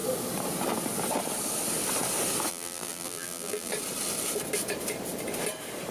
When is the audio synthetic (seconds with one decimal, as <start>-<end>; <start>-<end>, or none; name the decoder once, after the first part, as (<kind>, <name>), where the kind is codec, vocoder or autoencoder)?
2.5-3.7 (vocoder, BigVGAN v2)